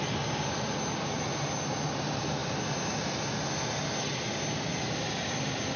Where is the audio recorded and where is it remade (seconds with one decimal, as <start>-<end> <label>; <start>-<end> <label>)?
0.0-5.8 recorded